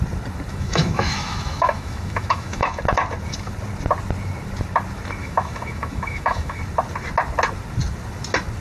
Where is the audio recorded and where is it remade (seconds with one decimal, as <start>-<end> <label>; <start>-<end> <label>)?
0.0-0.5 recorded; 0.5-2.8 remade; 2.8-5.2 recorded; 5.2-6.6 remade; 6.6-8.6 recorded